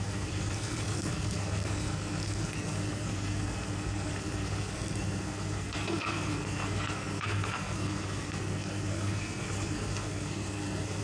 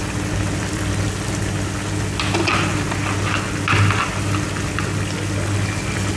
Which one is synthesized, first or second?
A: first